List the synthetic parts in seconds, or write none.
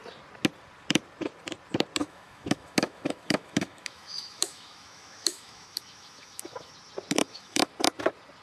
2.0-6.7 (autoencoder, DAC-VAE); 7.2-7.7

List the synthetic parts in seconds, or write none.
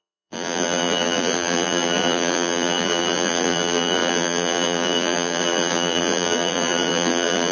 0.0-7.5 (vocoder, BigVGAN v2)